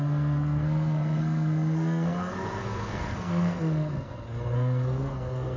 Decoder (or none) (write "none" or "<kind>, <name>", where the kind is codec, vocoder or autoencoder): codec, SNAC